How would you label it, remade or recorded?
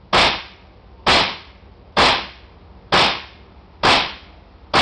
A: recorded